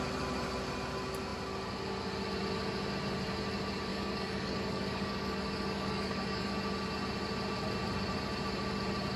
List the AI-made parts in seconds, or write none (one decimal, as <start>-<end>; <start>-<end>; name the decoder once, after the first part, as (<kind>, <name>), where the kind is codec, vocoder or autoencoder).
3.9-6.5 (codec, DAC)